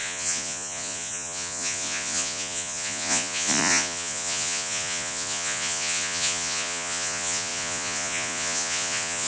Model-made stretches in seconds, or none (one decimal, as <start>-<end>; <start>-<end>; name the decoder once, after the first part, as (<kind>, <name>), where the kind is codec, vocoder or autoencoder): 0.0-9.3 (vocoder, Vocos)